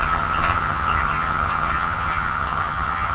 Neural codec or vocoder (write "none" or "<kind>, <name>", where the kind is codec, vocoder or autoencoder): vocoder, HiFi-GAN